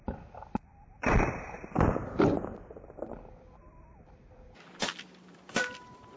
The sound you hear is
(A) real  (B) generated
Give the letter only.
B